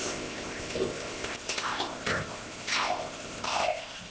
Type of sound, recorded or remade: remade